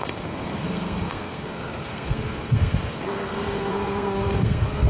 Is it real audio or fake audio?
fake